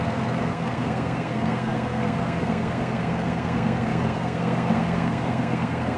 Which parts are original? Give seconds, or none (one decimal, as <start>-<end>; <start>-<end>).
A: none